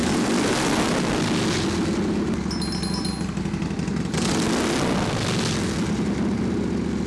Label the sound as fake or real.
real